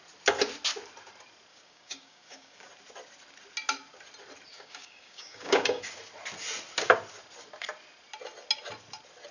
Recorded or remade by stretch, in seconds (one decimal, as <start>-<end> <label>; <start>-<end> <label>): 0.0-1.5 recorded; 1.5-2.7 remade; 2.7-4.5 recorded; 4.5-5.9 remade; 5.9-9.3 recorded